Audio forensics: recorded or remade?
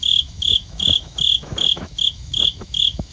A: remade